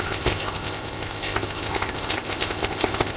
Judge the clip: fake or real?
fake